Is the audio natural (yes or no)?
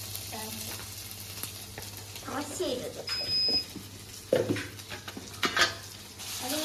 yes